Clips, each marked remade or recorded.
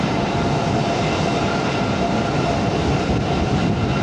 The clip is recorded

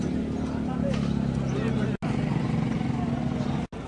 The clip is recorded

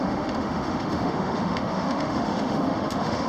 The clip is remade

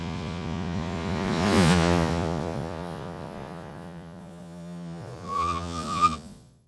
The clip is remade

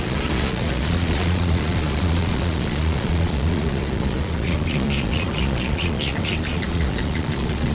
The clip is remade